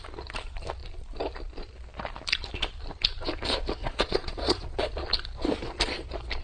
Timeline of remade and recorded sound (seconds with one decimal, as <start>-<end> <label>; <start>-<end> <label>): 0.0-3.8 recorded; 3.8-4.8 remade; 4.8-6.4 recorded